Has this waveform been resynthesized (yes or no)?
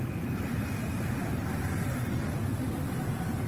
yes